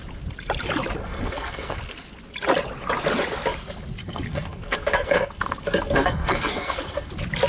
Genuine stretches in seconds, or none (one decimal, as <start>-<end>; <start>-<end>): 0.0-1.0; 1.8-4.0; 7.1-7.5